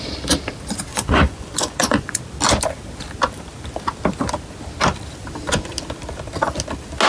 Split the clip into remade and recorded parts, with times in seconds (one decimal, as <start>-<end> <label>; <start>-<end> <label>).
0.0-0.9 recorded; 0.9-2.2 remade; 2.2-7.1 recorded